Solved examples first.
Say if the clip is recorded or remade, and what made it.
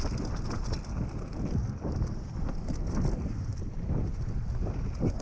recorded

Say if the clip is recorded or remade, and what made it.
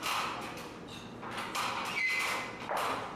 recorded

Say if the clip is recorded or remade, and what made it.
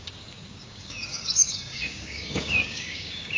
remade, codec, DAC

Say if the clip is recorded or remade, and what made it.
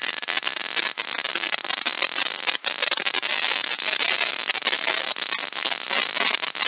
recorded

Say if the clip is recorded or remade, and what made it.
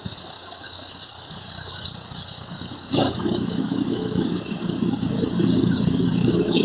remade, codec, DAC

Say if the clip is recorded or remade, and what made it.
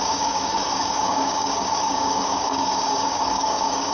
remade, codec, DAC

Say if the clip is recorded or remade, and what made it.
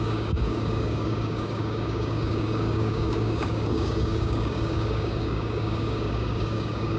remade, codec, DAC